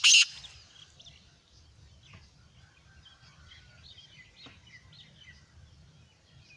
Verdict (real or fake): real